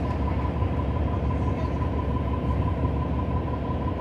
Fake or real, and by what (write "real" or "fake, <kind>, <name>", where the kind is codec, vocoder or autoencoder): real